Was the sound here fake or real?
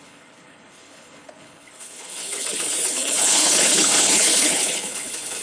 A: fake